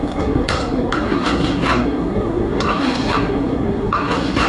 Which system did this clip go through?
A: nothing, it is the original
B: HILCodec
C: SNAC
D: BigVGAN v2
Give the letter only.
C